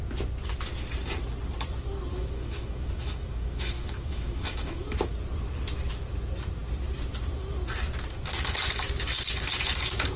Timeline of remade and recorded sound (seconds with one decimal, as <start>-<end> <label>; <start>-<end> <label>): 0.0-2.1 recorded; 2.1-5.0 remade; 5.0-10.2 recorded